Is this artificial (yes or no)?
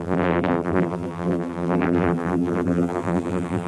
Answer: yes